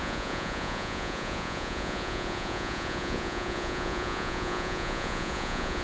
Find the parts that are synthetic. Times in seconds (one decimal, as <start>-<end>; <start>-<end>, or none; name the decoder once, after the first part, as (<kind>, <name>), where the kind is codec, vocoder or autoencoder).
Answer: 0.0-5.8 (vocoder, Vocos)